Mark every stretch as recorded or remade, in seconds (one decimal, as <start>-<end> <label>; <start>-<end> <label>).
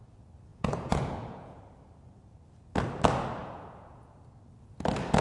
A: 0.0-0.5 recorded; 0.5-1.6 remade; 1.6-3.4 recorded; 3.4-4.2 remade; 4.2-5.2 recorded